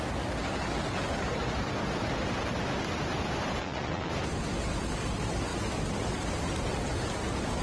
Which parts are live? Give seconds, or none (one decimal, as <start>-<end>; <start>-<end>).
0.0-3.6; 4.1-7.6